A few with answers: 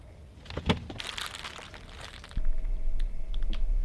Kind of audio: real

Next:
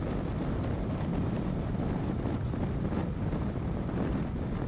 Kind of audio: real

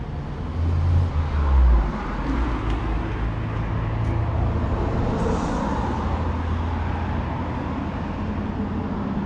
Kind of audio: real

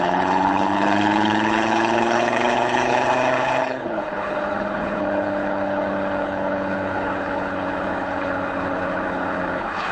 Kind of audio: fake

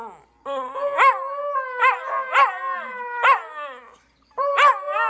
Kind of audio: real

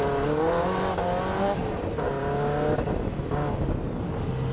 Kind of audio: real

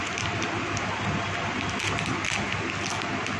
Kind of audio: real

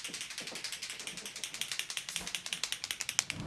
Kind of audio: real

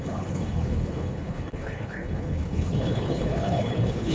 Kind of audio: fake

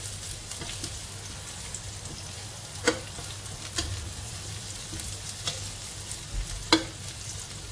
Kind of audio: real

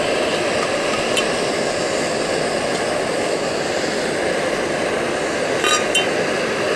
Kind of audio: real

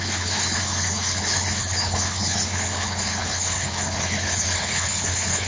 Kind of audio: fake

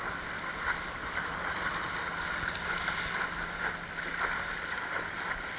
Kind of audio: real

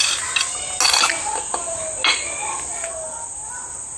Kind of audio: real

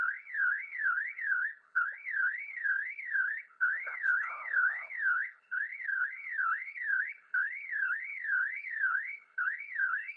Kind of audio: fake